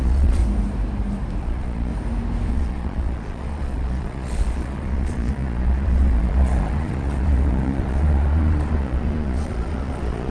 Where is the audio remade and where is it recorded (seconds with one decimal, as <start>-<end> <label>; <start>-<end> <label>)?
0.0-0.4 remade; 0.4-1.4 recorded; 1.4-1.9 remade; 1.9-2.5 recorded; 2.5-10.3 remade